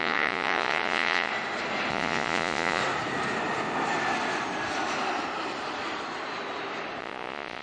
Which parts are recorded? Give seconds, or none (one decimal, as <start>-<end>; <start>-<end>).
1.3-1.9; 2.8-7.0